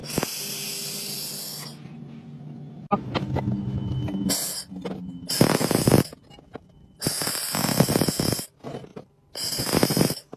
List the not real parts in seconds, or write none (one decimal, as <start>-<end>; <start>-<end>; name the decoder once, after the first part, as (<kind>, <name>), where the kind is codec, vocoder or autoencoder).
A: 8.9-10.4 (vocoder, BigVGAN v2)